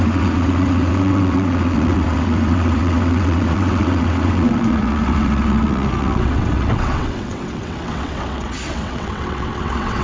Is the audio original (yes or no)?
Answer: no